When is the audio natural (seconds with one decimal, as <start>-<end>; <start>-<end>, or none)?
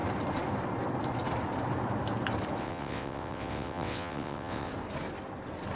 0.0-2.6; 4.7-5.8